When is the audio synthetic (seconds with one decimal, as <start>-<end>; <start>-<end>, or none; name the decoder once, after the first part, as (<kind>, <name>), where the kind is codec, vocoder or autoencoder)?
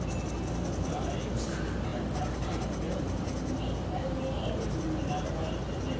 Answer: none